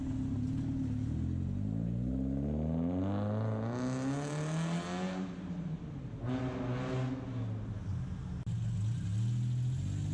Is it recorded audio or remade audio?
recorded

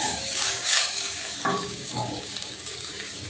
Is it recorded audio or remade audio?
remade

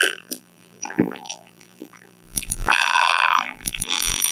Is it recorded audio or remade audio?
remade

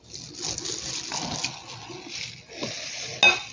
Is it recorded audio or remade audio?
recorded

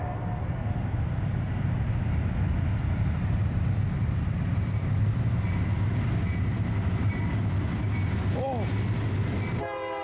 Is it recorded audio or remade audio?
recorded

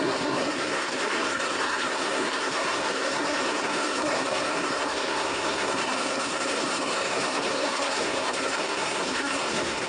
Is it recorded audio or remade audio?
remade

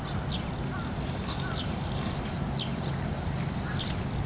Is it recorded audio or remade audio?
recorded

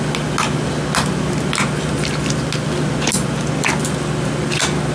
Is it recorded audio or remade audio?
recorded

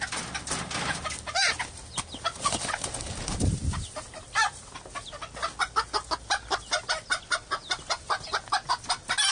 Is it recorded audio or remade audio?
recorded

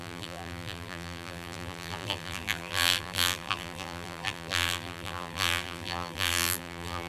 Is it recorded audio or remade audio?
remade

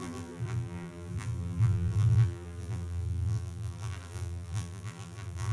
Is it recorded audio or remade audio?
remade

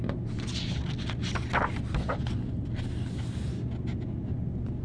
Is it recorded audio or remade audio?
recorded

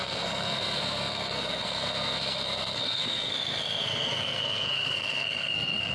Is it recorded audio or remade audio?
remade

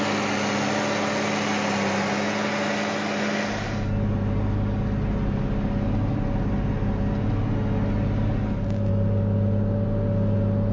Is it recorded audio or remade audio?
recorded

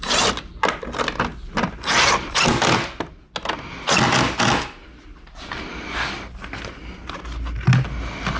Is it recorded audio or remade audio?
recorded